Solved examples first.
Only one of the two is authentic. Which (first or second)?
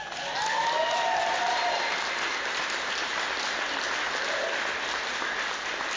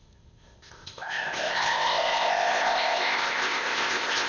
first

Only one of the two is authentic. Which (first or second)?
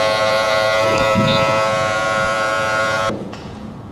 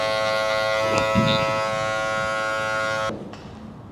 second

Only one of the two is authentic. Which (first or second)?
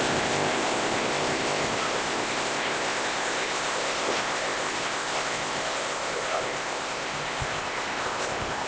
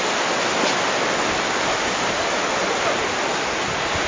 second